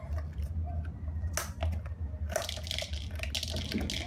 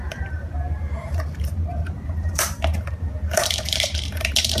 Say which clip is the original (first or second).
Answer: first